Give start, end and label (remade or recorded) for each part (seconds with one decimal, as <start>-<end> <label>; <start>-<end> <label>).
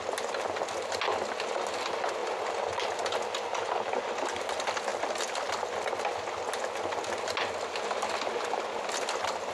0.0-9.5 recorded